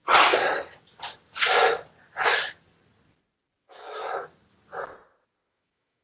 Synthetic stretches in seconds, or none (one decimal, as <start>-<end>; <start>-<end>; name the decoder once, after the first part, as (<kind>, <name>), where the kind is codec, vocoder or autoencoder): 3.6-4.0 (autoencoder, DAC-VAE); 5.5-6.0